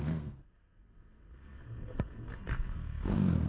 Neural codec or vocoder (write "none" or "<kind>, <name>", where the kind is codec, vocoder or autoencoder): codec, SNAC